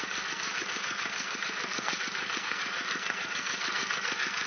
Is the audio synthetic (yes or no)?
yes